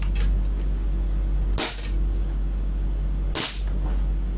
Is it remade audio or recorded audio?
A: recorded